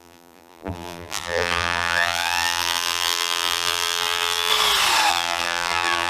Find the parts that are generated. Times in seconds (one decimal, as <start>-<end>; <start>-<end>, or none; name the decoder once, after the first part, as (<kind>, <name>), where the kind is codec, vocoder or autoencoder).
0.0-4.5 (vocoder, BigVGAN v2); 5.1-6.1